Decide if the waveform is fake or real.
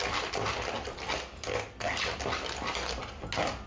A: real